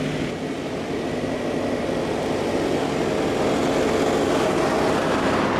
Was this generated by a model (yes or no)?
no